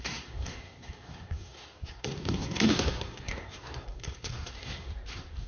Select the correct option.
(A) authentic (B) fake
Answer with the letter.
B